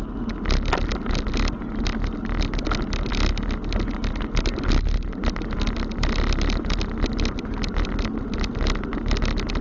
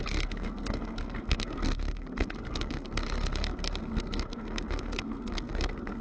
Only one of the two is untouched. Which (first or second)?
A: first